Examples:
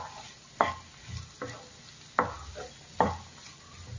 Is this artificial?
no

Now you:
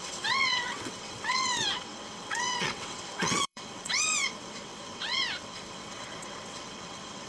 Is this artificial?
yes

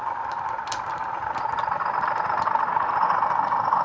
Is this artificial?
no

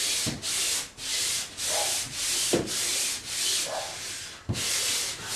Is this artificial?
no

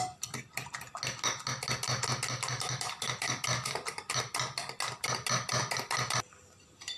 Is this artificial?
no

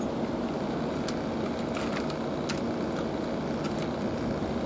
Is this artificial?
no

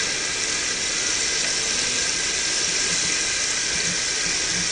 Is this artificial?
no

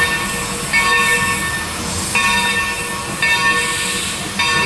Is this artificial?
no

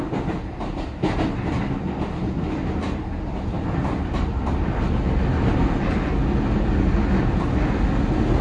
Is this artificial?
no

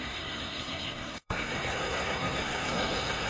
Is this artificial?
yes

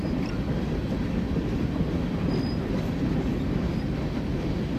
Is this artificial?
no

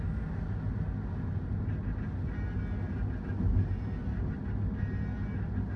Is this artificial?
no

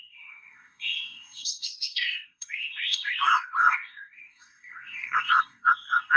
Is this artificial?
yes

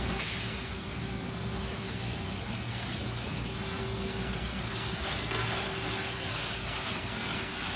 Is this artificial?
yes